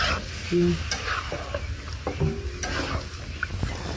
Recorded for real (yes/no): yes